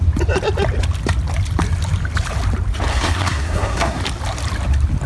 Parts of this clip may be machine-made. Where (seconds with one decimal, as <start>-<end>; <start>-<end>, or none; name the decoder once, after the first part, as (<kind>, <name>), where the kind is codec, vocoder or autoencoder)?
2.9-4.0 (codec, SNAC)